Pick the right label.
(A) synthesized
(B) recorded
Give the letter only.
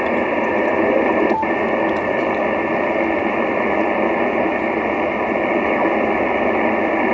B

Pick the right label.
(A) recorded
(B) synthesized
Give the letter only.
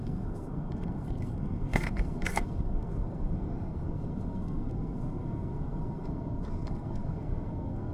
B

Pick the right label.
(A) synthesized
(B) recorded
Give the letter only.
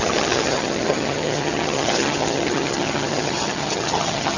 A